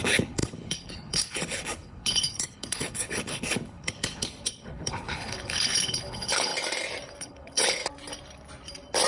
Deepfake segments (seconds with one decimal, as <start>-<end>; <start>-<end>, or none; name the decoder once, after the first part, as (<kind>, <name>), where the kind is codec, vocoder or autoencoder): 0.0-6.5 (codec, HILCodec); 7.2-7.8